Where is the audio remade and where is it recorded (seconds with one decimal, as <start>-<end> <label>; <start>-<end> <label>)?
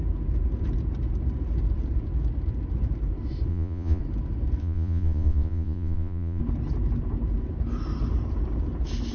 0.0-3.5 recorded; 3.5-4.0 remade; 4.0-4.6 recorded; 4.6-6.4 remade; 6.4-9.1 recorded